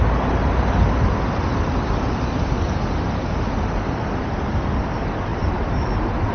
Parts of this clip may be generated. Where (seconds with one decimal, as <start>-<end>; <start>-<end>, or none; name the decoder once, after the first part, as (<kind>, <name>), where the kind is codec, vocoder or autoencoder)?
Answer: 5.3-6.3 (vocoder, BigVGAN v2)

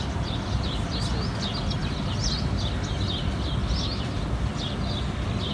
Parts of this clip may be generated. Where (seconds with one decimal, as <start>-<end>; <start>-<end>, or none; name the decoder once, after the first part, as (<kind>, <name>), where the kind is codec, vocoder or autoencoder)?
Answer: none

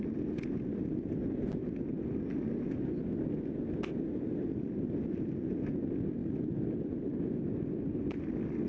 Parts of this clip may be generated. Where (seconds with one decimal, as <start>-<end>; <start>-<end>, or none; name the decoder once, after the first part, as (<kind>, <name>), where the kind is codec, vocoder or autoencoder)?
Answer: none